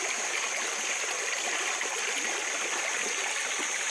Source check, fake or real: real